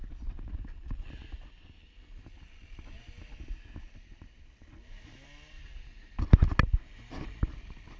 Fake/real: real